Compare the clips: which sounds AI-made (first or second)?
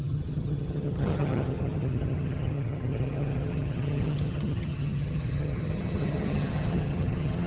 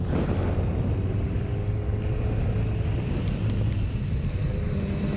first